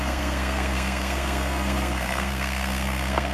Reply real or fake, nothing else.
fake